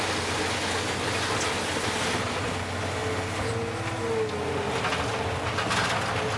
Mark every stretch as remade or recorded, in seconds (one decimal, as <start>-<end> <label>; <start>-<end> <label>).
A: 0.0-6.4 recorded